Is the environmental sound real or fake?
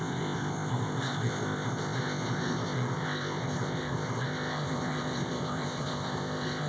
fake